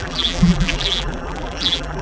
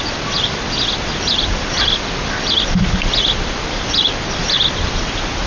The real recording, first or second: second